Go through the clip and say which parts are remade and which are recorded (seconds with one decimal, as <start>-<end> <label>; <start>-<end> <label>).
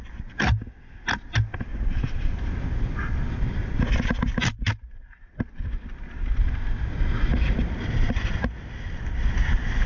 0.0-9.9 recorded